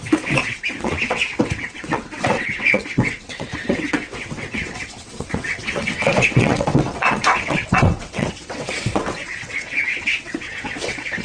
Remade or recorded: remade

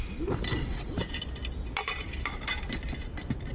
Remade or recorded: recorded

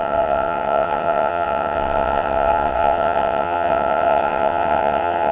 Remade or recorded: remade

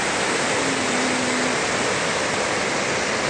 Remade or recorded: recorded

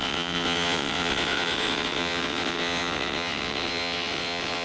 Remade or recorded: remade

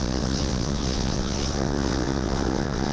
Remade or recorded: remade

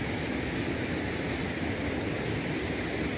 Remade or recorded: recorded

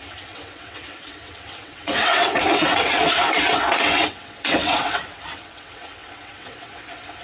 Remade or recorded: remade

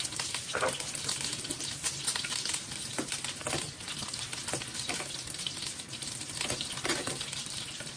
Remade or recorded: recorded